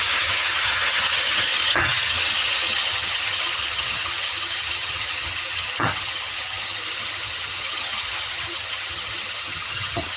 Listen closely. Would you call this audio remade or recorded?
remade